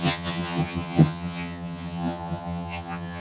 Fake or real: fake